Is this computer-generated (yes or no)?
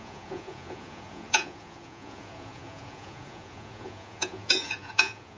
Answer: yes